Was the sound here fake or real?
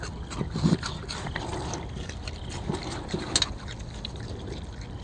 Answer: real